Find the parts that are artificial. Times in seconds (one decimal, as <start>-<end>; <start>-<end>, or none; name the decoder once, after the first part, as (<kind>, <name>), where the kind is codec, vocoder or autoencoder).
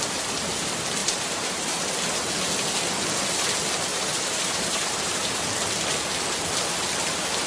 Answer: 1.0-1.9 (vocoder, BigVGAN v2); 3.9-5.4